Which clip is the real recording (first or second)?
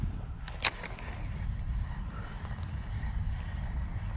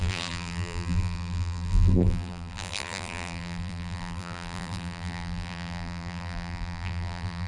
first